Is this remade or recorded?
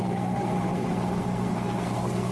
remade